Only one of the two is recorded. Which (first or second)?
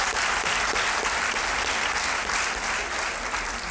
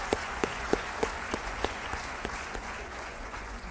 first